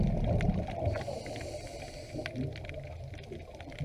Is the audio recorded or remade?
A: recorded